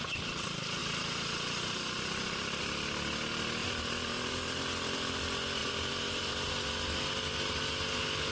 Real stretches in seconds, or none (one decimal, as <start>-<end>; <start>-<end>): 0.0-0.8; 2.6-3.6; 4.6-5.6; 6.3-8.3

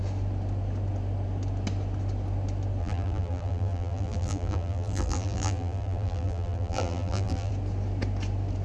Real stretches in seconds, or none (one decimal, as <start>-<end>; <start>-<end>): 0.0-2.8; 7.5-8.6

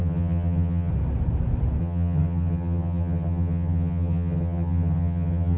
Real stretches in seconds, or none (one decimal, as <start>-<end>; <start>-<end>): 0.9-1.8

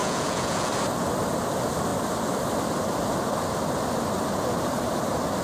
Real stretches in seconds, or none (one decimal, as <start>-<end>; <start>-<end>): 0.7-5.4